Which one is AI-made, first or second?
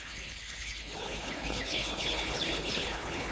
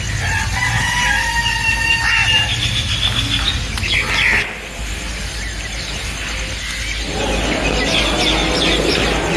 first